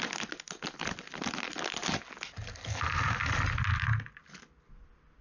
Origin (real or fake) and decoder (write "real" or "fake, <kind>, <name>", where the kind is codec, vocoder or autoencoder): real